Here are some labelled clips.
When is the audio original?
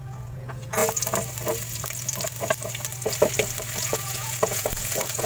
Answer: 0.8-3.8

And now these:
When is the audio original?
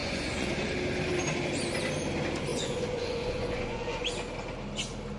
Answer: 0.5-2.5; 4.1-5.2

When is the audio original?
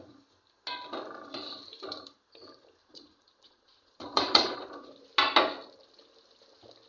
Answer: 0.0-2.8; 4.9-6.9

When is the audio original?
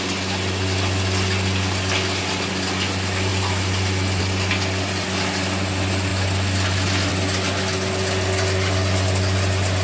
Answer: 0.0-9.8